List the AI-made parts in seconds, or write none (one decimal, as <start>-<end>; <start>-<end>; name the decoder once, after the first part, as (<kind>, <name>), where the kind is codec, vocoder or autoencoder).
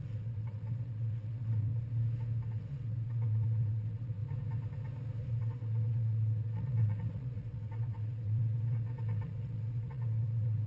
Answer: 0.0-1.7 (vocoder, WaveNeXt); 2.5-4.2; 5.4-10.7